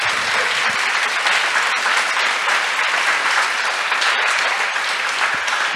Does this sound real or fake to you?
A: real